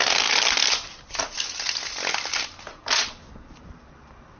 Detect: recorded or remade recorded